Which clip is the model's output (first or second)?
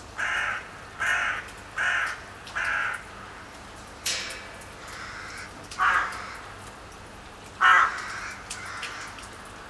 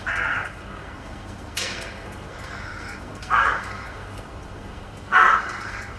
second